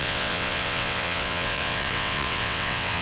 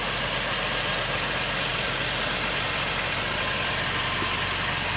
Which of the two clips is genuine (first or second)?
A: second